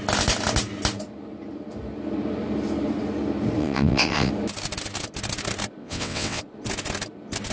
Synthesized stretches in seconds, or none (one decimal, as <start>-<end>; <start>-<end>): 3.6-4.3; 5.8-6.4